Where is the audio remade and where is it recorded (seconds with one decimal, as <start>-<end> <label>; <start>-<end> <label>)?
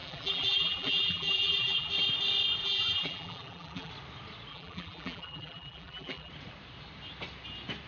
0.0-1.9 remade; 1.9-2.6 recorded; 2.6-3.9 remade; 3.9-4.5 recorded; 4.5-6.3 remade; 6.3-7.9 recorded